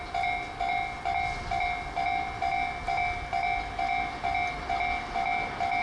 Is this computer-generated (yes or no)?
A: no